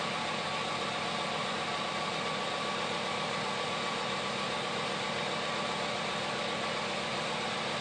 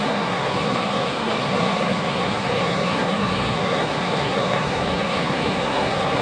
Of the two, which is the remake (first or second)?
second